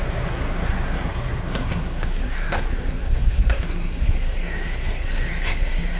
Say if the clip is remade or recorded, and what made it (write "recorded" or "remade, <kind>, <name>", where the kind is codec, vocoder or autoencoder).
remade, codec, SNAC